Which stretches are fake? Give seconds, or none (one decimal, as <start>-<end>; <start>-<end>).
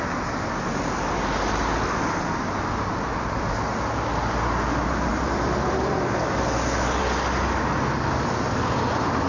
none